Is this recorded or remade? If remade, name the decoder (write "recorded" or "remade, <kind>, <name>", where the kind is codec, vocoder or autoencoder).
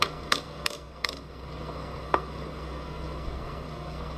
remade, codec, SNAC